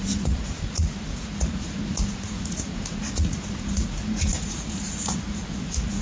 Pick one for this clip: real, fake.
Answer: fake